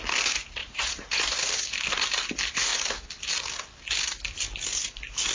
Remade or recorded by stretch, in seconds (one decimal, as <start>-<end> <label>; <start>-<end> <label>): 0.0-0.6 recorded; 0.6-1.2 remade; 1.2-5.3 recorded